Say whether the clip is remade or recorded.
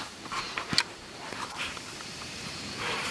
remade